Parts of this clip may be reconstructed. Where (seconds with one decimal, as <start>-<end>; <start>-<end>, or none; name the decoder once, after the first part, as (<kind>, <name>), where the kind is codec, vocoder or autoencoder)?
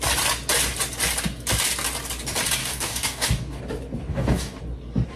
2.6-3.6 (codec, DAC); 4.1-4.6